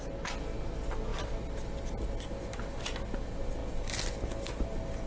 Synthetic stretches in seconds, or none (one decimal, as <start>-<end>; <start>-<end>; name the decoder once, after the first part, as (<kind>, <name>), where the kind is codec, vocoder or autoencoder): none